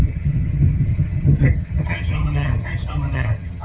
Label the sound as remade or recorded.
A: remade